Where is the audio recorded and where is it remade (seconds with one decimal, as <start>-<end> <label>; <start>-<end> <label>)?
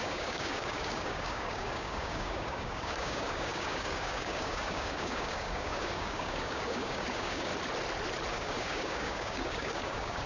0.0-7.5 remade; 7.5-8.3 recorded; 8.3-10.3 remade